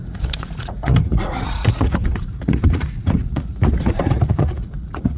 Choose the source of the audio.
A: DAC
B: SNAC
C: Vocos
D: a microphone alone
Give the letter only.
C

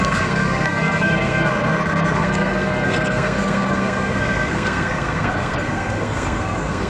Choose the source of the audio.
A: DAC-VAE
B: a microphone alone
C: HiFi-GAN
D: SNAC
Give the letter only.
D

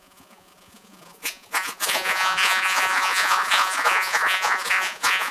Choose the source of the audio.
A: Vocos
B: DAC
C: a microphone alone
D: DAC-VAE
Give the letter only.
A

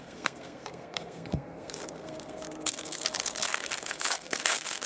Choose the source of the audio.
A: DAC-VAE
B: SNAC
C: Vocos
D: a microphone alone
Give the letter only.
B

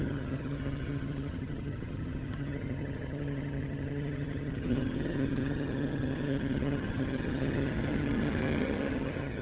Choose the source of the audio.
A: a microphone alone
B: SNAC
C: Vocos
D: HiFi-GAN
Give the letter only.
D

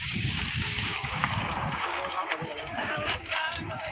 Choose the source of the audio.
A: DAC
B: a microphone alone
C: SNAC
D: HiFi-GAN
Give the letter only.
A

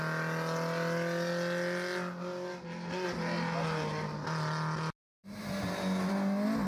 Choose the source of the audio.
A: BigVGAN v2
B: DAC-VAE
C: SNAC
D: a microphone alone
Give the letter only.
D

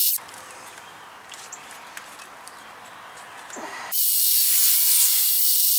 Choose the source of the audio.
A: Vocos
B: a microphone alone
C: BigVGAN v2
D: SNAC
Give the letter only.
B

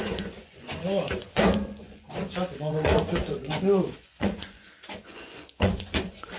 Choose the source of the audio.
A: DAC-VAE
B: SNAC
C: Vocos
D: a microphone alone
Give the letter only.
C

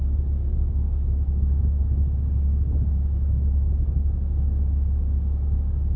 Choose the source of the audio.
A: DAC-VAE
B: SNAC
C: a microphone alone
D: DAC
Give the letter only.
D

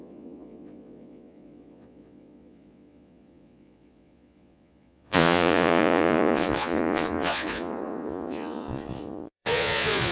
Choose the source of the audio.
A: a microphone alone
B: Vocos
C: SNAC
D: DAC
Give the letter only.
B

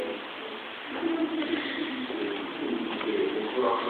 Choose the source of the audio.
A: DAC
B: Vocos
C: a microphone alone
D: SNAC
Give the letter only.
C